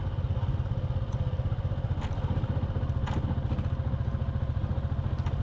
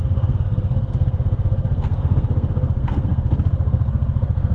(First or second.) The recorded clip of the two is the first